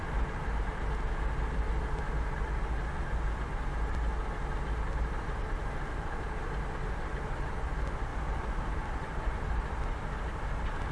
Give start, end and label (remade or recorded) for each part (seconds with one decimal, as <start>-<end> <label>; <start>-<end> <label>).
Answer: 0.0-10.9 recorded